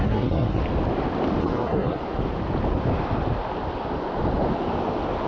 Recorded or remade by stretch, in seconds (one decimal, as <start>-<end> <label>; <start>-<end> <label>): 0.0-0.6 remade; 0.6-1.4 recorded; 1.4-2.0 remade; 2.0-5.3 recorded